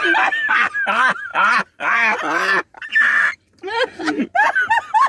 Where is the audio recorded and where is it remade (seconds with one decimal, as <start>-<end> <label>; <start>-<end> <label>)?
0.0-1.3 recorded; 1.3-4.0 remade; 4.0-5.1 recorded